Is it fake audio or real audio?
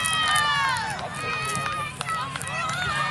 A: real